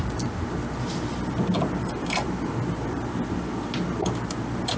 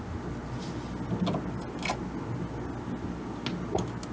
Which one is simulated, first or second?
first